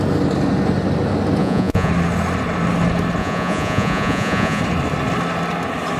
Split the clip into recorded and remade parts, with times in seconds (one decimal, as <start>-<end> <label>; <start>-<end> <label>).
0.0-1.4 recorded; 1.4-1.9 remade; 1.9-3.2 recorded; 3.2-4.6 remade; 4.6-6.0 recorded